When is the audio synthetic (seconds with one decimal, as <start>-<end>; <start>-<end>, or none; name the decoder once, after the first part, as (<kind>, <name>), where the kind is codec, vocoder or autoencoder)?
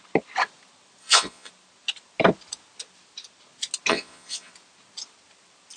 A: 1.0-1.5 (vocoder, Vocos); 3.9-4.5